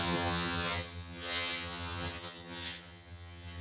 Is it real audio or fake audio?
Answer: fake